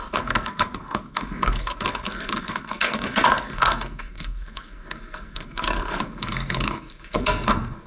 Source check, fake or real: fake